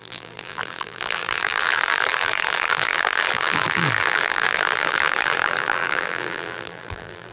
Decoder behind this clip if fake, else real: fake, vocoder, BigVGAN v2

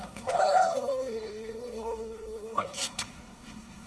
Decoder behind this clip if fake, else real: fake, codec, SNAC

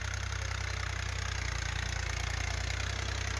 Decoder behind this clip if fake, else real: real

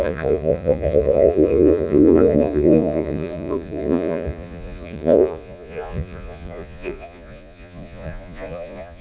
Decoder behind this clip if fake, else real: fake, vocoder, Vocos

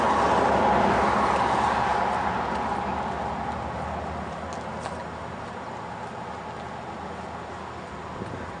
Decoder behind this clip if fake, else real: real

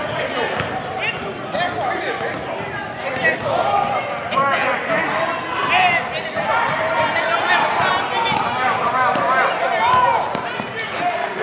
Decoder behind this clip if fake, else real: real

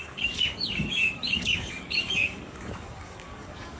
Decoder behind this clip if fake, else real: fake, codec, DAC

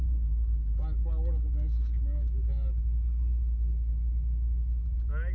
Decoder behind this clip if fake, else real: real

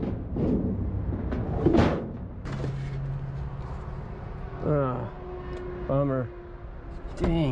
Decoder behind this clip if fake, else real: real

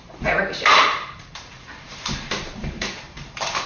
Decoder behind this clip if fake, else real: fake, vocoder, BigVGAN v2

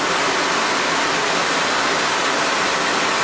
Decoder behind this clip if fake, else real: real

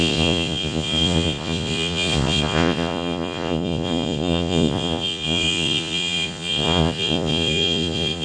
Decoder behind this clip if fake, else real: fake, vocoder, Vocos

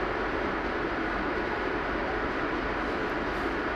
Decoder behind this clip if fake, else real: fake, vocoder, BigVGAN v2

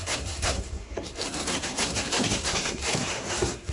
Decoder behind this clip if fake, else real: fake, codec, SNAC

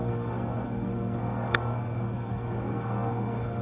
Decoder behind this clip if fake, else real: fake, codec, SNAC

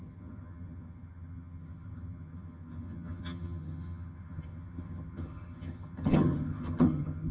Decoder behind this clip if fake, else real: fake, vocoder, HiFi-GAN